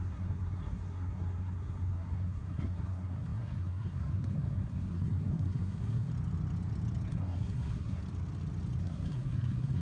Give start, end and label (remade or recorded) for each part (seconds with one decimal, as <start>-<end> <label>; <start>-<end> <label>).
0.0-6.1 remade; 6.1-7.1 recorded; 7.1-8.0 remade; 8.0-8.8 recorded; 8.8-9.8 remade